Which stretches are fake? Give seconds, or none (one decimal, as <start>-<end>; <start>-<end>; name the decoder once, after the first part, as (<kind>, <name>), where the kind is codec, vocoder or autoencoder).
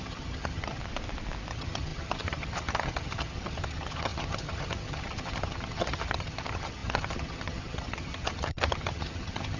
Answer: 0.0-0.8 (vocoder, HiFi-GAN); 1.5-9.6